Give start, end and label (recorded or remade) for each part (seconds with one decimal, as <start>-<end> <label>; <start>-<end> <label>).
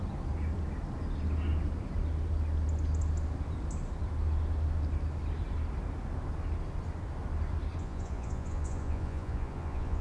0.0-7.8 recorded; 7.8-10.0 remade